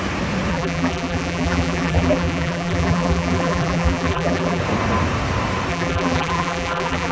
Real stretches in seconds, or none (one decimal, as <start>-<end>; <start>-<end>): 0.0-0.5; 4.6-5.7